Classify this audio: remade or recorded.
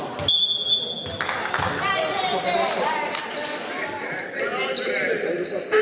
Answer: recorded